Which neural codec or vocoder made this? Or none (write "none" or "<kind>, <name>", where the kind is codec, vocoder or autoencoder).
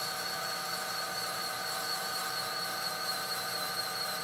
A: vocoder, BigVGAN v2